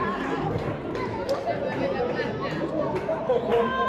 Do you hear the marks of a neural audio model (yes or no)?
no